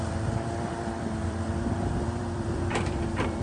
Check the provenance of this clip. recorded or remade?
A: remade